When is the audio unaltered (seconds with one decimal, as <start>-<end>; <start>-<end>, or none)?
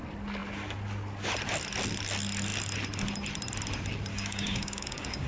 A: 0.0-4.1